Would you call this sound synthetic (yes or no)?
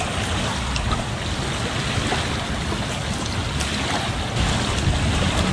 no